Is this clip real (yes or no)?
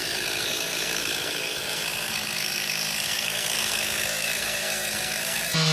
no